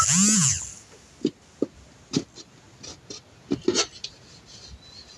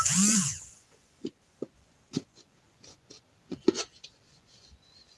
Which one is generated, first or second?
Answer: second